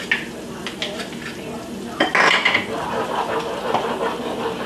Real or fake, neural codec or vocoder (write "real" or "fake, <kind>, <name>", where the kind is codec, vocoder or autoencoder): real